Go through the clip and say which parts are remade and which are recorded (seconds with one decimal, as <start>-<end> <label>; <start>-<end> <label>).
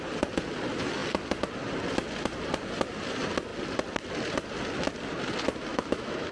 0.0-5.7 recorded; 5.7-6.3 remade